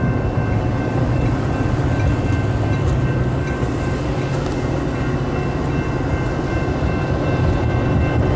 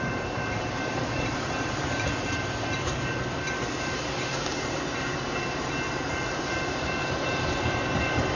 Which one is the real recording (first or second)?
first